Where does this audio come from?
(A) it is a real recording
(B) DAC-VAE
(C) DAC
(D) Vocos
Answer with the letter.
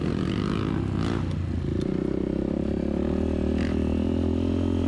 A